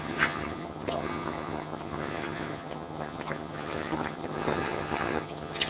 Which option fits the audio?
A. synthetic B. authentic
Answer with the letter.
A